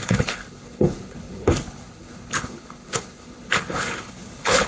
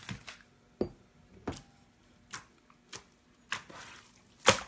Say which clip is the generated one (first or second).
first